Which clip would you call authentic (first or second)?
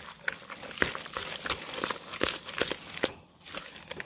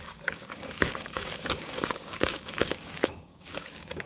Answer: first